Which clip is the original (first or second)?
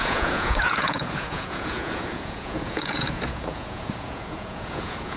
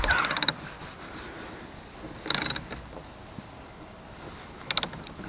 second